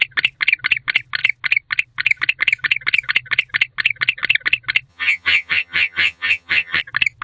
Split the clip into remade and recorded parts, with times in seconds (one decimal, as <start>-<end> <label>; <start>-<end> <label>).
0.0-4.9 recorded; 4.9-6.8 remade; 6.8-7.2 recorded